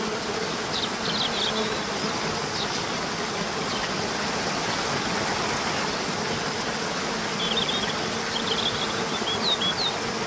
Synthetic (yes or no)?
no